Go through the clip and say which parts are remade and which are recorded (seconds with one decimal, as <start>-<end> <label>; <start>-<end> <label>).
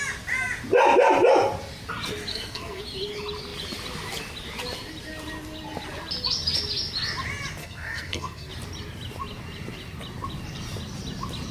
0.0-2.3 recorded; 2.3-2.8 remade; 2.8-7.6 recorded; 7.6-8.5 remade; 8.5-11.5 recorded